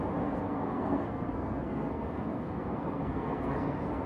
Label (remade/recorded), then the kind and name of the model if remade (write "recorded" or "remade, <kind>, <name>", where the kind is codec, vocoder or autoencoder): remade, codec, SNAC